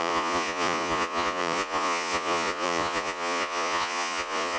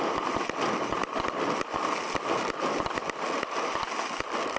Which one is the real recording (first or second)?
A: second